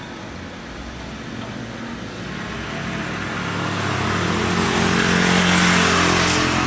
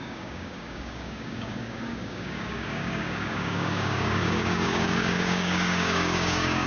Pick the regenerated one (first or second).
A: second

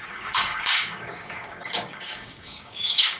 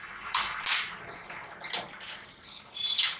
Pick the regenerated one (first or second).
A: first